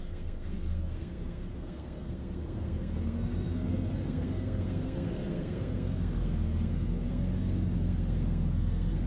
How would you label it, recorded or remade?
remade